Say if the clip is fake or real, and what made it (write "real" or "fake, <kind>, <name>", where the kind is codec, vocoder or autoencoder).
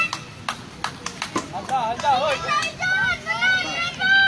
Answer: real